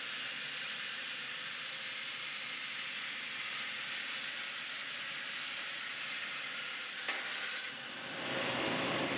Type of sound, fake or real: real